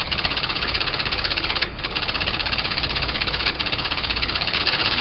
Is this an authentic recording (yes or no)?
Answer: no